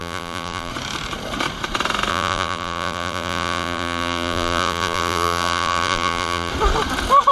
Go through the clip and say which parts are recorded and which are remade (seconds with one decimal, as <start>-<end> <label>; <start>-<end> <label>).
0.0-0.7 remade; 0.7-2.1 recorded; 2.1-6.5 remade; 6.5-7.3 recorded